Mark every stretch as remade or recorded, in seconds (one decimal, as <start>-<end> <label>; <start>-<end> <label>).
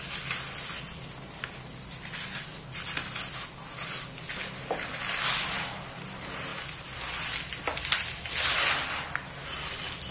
0.0-10.1 recorded